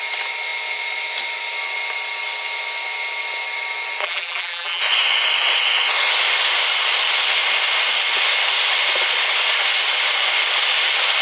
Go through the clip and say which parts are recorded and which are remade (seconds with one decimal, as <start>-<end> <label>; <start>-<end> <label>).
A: 0.0-4.0 recorded; 4.0-4.8 remade; 4.8-11.2 recorded